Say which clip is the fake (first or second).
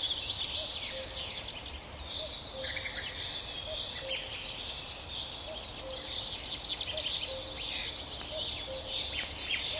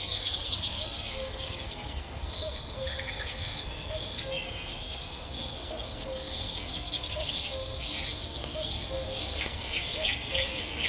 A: second